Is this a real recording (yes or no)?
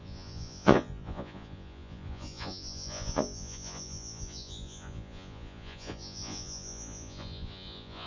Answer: no